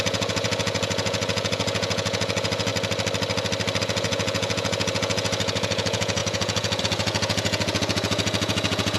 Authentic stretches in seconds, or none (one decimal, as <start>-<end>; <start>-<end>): 2.7-3.8